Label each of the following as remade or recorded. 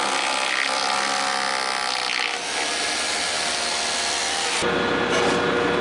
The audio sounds recorded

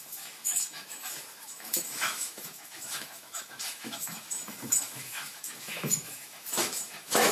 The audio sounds remade